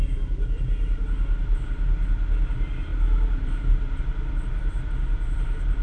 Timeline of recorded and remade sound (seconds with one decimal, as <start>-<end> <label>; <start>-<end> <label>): 0.0-5.8 recorded